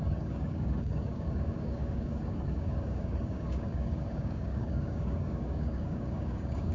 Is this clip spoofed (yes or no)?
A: yes